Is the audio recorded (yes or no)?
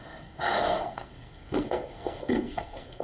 no